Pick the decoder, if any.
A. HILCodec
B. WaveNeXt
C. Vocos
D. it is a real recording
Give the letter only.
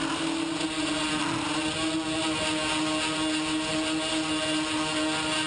D